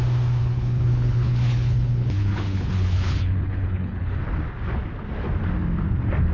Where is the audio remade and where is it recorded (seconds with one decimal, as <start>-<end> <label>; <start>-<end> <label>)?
0.0-0.4 recorded; 0.4-4.2 remade; 4.2-6.3 recorded